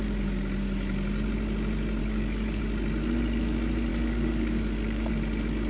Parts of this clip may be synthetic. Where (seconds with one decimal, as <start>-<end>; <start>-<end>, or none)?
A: 2.0-2.6; 3.9-5.1